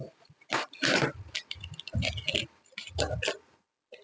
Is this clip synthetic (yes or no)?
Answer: no